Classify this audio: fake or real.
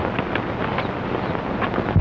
real